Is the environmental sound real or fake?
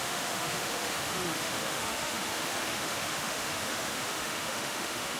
fake